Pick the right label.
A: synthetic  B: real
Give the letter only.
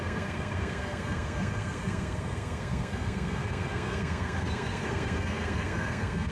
A